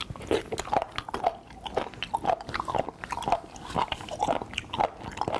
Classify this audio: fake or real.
real